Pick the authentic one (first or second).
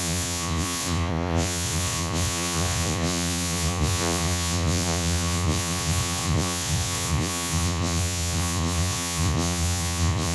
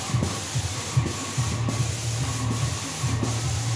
second